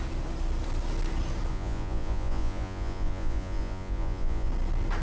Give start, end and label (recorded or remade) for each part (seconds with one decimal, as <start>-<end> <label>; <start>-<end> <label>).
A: 0.0-1.5 recorded; 1.5-4.5 remade; 4.5-5.0 recorded